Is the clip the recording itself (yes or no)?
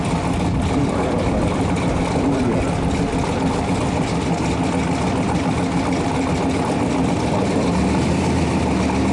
yes